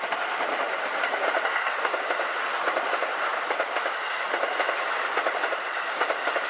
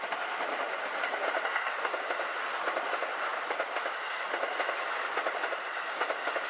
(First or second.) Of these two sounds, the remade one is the first